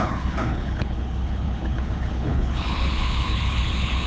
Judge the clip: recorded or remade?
remade